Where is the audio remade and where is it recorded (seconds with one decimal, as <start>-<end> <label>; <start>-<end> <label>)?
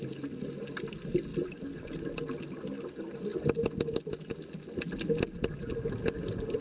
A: 0.0-6.6 recorded